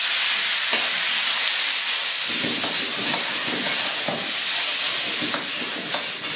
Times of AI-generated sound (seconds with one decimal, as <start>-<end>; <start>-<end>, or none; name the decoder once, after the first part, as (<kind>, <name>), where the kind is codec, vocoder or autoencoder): none